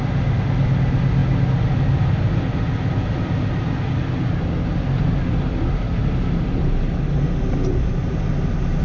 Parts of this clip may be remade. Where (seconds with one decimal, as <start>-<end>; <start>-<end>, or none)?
none